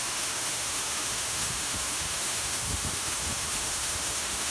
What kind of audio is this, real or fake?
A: fake